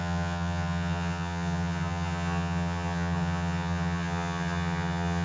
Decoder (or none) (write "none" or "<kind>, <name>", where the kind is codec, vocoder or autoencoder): vocoder, HiFi-GAN